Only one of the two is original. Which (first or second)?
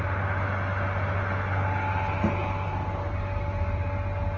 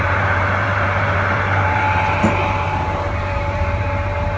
first